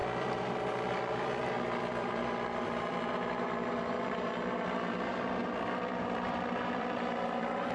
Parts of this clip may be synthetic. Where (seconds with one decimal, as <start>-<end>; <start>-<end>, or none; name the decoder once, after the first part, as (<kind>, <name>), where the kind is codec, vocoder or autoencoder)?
0.0-7.7 (vocoder, BigVGAN v2)